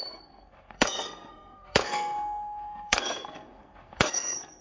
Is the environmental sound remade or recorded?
remade